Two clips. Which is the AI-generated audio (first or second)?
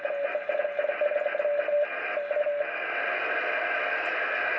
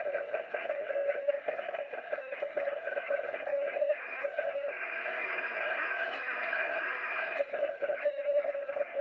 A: second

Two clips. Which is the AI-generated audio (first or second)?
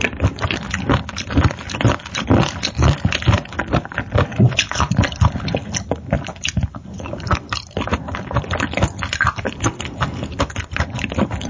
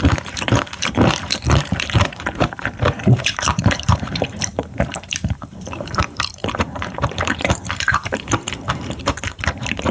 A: second